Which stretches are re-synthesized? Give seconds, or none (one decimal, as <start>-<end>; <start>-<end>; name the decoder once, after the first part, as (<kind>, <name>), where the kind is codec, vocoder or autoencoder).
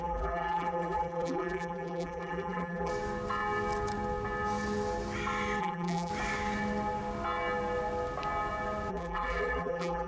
0.0-2.9 (vocoder, BigVGAN v2); 5.6-6.1; 8.9-10.1